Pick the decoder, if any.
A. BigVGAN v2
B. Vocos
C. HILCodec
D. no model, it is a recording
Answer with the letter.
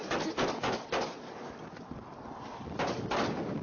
D